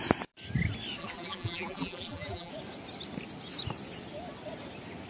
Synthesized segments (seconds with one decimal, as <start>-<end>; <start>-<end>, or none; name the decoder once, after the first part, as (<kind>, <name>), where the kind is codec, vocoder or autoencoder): 1.0-2.5 (vocoder, BigVGAN v2)